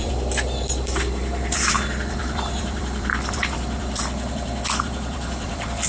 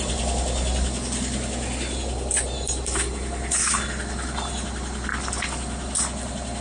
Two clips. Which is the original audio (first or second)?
second